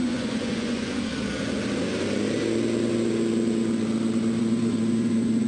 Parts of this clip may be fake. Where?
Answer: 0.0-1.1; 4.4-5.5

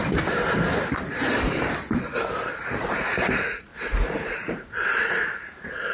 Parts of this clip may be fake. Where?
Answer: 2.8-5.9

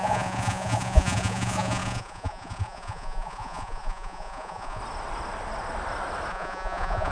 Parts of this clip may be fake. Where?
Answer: 0.0-4.8; 6.3-7.1

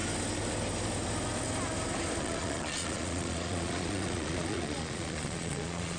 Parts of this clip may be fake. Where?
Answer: 2.2-6.0

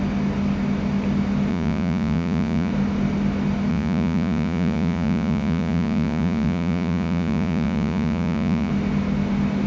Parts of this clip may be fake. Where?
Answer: 1.5-2.7; 3.7-8.7

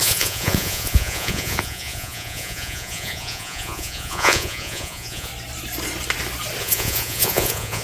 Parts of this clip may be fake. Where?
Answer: 0.0-5.3; 6.6-7.8

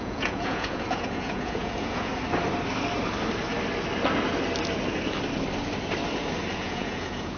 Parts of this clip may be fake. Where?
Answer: 0.0-2.1; 6.5-7.4